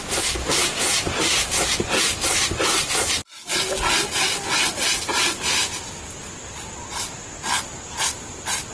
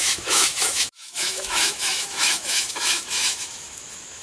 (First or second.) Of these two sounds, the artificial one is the second